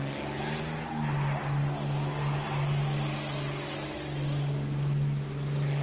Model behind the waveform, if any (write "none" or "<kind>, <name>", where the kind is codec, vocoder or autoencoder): none